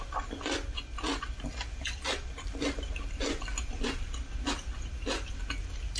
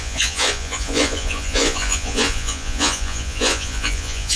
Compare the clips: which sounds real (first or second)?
first